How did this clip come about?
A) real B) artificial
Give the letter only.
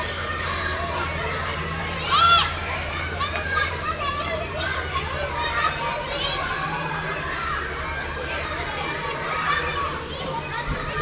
B